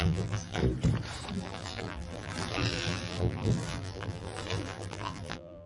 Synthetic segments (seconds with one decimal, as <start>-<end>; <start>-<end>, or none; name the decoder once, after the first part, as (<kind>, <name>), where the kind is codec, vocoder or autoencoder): 0.0-0.6 (vocoder, BigVGAN v2); 1.3-5.7